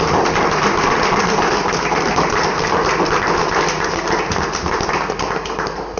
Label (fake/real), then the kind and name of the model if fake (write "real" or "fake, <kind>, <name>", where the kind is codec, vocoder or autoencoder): real